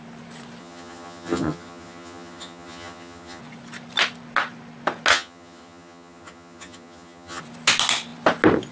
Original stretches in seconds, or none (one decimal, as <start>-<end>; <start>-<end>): 0.0-0.6; 3.4-5.1; 7.4-8.7